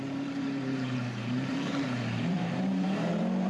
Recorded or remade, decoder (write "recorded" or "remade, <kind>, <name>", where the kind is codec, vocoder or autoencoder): remade, vocoder, BigVGAN v2